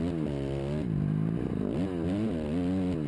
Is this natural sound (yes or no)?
yes